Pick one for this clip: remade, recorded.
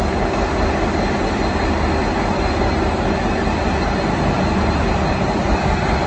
recorded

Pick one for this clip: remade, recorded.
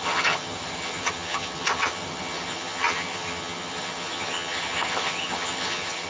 remade